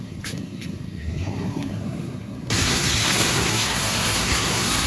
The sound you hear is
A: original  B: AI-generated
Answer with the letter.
B